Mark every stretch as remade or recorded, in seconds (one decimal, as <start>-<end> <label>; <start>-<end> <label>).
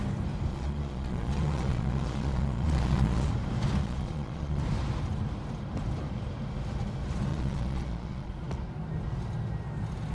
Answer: 0.0-0.5 recorded; 0.5-3.3 remade; 3.3-3.8 recorded; 3.8-4.6 remade; 4.6-7.3 recorded; 7.3-8.3 remade; 8.3-10.1 recorded